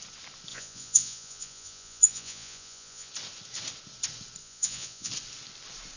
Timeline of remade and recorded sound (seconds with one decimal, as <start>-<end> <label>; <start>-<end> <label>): 0.0-0.5 recorded; 0.5-3.1 remade; 3.1-4.4 recorded; 4.4-5.1 remade; 5.1-6.0 recorded